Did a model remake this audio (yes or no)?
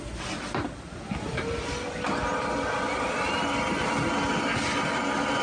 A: no